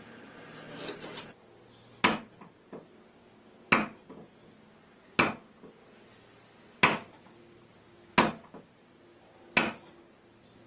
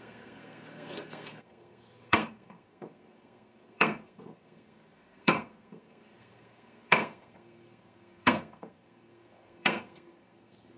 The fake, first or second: second